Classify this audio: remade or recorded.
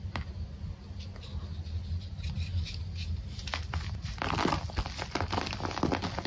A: recorded